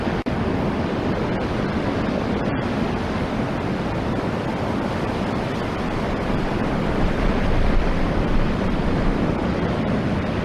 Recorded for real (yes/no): yes